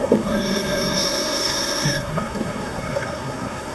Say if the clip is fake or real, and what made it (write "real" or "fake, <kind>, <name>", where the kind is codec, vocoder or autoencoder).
fake, codec, SNAC